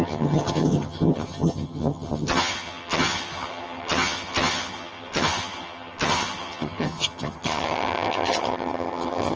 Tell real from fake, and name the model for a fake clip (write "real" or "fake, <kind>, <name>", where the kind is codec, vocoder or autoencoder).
fake, vocoder, HiFi-GAN